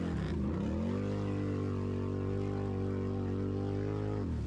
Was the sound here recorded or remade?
recorded